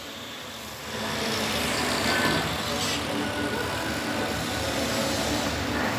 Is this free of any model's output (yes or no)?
yes